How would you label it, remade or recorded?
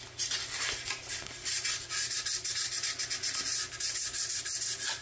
recorded